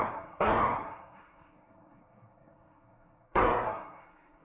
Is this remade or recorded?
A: remade